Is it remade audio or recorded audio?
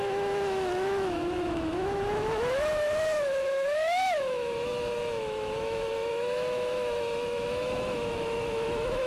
remade